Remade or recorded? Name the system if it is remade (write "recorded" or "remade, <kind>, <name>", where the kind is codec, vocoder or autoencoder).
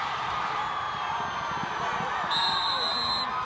recorded